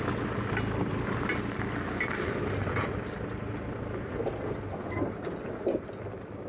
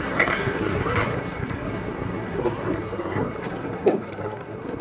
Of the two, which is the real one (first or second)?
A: first